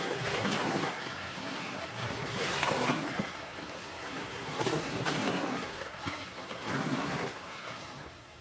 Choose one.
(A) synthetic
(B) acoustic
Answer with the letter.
A